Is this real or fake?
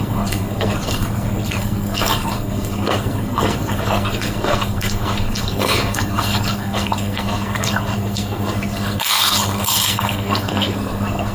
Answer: fake